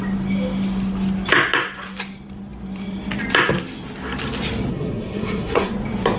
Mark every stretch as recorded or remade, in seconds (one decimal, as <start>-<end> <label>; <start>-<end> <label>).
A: 0.0-4.7 recorded; 4.7-5.7 remade; 5.7-6.2 recorded